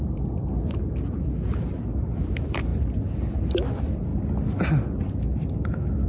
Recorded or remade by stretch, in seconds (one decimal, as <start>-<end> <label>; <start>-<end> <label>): 0.0-6.1 recorded